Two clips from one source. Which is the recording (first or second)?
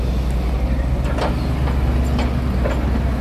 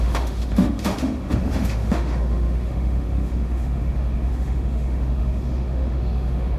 first